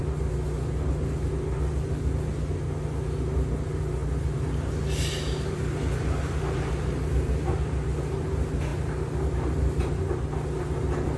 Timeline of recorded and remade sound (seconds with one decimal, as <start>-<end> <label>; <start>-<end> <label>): 0.0-11.2 recorded